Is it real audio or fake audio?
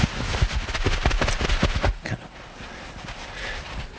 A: real